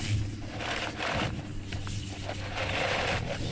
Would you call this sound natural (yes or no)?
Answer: yes